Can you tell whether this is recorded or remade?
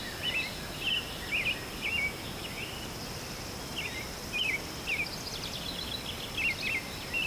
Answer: recorded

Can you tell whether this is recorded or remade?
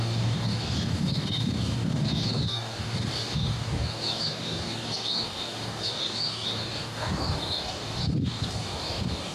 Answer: remade